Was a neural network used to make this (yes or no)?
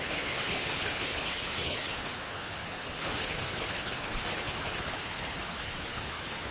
yes